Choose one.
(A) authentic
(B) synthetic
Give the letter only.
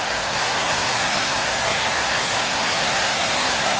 B